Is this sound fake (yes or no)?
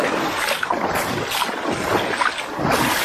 no